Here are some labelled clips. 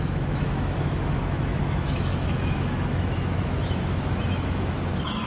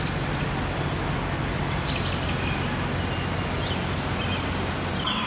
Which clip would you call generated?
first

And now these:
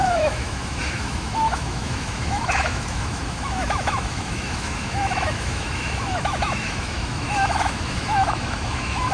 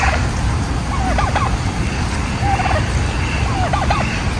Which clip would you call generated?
first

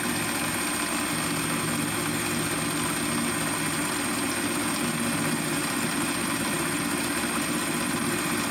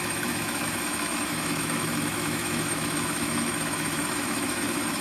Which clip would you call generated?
second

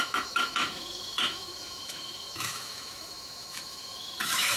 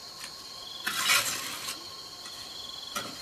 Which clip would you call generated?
first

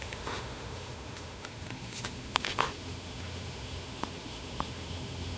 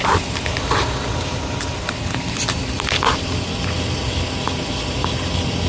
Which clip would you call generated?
first